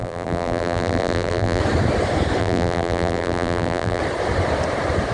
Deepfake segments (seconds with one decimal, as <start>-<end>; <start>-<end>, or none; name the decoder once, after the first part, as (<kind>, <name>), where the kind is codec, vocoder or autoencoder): 0.0-1.6 (vocoder, BigVGAN v2); 2.4-4.0